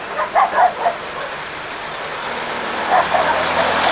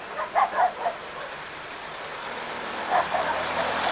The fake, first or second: second